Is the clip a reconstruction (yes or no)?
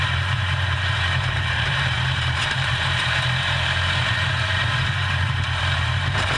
yes